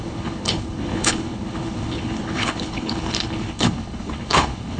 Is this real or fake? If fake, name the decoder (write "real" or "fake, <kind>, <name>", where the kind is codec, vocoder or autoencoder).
fake, codec, HILCodec